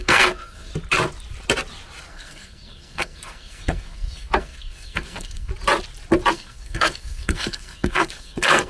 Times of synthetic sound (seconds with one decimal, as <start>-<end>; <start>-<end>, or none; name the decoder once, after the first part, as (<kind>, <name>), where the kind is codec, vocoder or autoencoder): 0.0-0.7 (codec, SNAC); 2.1-5.5; 6.3-8.7